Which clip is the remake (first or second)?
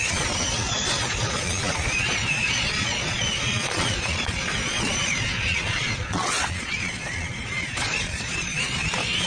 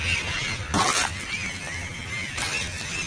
first